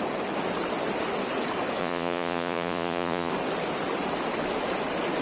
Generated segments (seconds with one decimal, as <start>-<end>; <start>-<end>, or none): 1.8-3.3